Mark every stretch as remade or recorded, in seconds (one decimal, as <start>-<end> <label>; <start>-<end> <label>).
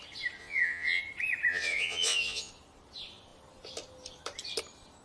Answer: 0.0-0.4 recorded; 0.4-1.0 remade; 1.0-1.5 recorded; 1.5-2.5 remade; 2.5-5.0 recorded